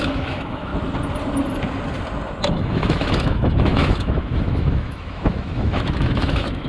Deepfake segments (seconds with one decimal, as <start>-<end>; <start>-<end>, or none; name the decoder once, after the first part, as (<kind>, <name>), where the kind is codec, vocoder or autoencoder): 0.0-0.7 (autoencoder, DAC-VAE); 2.5-6.7